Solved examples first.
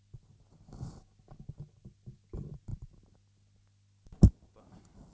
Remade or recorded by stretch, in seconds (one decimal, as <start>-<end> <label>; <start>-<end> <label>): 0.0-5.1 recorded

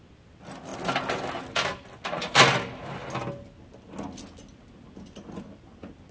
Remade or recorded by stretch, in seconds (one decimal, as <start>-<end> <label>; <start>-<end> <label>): 0.0-6.1 recorded

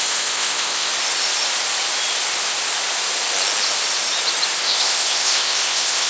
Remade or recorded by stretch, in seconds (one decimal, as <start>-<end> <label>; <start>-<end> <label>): 0.0-0.9 remade; 0.9-4.6 recorded; 4.6-6.1 remade

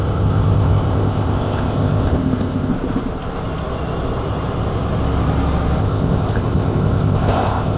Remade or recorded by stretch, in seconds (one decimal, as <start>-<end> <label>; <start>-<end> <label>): 0.0-2.7 remade; 2.7-5.8 recorded; 5.8-7.8 remade